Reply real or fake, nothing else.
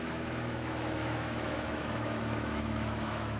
fake